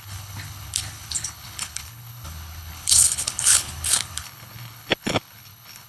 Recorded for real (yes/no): no